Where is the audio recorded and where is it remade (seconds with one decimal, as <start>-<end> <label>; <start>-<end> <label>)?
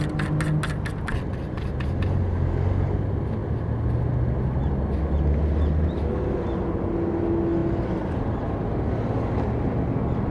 0.0-10.3 recorded